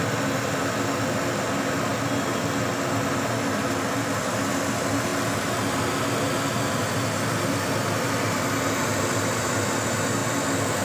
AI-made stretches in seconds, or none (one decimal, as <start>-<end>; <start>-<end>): none

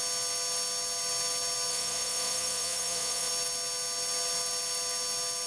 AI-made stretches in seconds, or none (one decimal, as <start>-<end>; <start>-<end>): 1.7-3.3

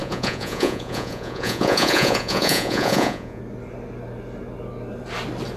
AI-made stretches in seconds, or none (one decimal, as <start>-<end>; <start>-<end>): 0.0-3.4

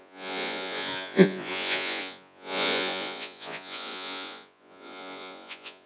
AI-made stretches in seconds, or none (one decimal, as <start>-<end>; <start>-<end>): 0.0-5.9